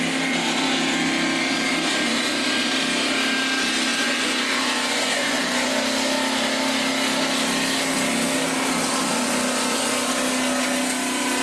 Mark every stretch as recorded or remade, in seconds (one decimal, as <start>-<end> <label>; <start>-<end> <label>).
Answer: 0.0-3.9 recorded; 3.9-5.7 remade; 5.7-9.1 recorded; 9.1-10.1 remade; 10.1-11.4 recorded